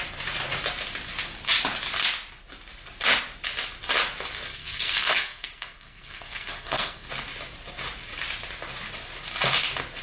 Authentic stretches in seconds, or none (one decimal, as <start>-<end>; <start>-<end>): 0.0-4.5; 7.1-10.0